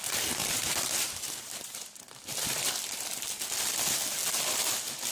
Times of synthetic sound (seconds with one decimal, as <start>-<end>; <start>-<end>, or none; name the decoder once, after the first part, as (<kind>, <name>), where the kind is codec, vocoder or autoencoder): 0.4-2.7 (vocoder, BigVGAN v2)